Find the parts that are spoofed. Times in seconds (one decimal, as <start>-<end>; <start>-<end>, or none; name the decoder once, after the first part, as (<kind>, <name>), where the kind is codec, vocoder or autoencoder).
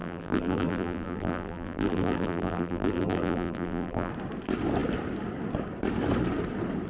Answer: 0.0-4.1 (vocoder, BigVGAN v2)